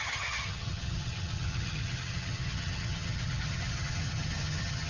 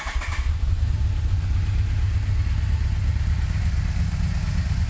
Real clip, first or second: second